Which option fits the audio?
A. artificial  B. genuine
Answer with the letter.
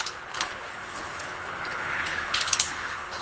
A